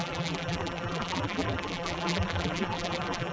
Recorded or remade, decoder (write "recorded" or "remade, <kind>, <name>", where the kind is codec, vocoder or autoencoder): remade, vocoder, BigVGAN v2